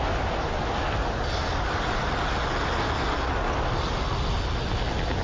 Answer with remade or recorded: recorded